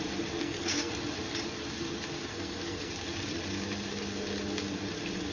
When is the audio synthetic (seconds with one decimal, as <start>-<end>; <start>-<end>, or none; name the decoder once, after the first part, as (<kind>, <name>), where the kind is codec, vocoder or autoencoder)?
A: 0.4-0.9 (codec, SNAC); 2.3-2.9